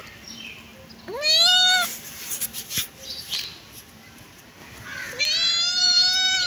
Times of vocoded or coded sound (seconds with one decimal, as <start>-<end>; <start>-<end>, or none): 0.0-0.7; 3.1-4.6; 5.2-6.5